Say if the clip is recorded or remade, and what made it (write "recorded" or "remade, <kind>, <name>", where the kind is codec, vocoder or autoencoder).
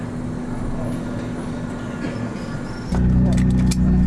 recorded